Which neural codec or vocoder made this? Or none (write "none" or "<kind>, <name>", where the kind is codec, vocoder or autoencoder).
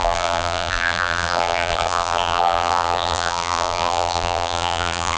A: vocoder, BigVGAN v2